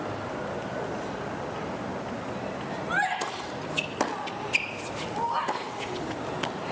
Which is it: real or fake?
real